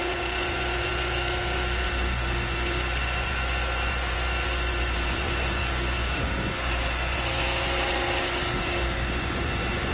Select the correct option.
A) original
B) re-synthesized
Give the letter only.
B